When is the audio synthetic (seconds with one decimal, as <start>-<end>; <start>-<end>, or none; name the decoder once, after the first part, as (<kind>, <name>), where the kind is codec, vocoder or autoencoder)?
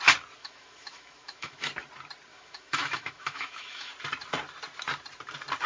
0.4-1.7 (autoencoder, DAC-VAE); 2.3-3.9